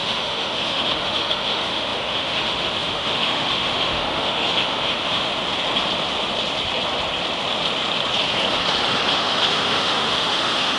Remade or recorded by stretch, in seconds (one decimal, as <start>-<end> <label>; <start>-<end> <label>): 0.0-5.3 remade; 5.3-9.1 recorded; 9.1-10.8 remade